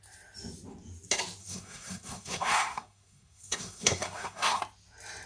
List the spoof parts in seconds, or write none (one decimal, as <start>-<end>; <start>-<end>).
1.4-4.6